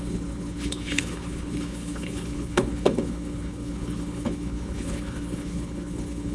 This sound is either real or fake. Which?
fake